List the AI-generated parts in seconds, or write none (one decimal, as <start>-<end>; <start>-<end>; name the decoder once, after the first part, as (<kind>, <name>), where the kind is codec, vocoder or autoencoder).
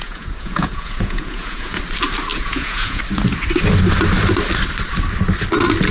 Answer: 0.0-1.8 (vocoder, Vocos); 2.3-3.0